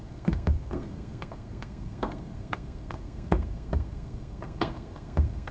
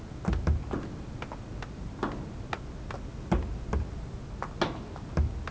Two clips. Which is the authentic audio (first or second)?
second